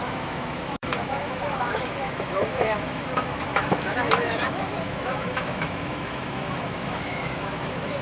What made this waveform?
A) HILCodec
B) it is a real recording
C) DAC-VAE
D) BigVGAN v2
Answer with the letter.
C